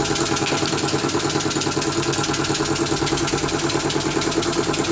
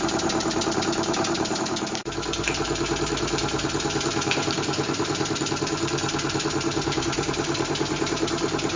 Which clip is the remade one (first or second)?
second